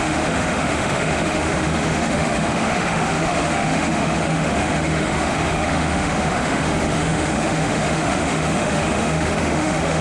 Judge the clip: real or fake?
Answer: fake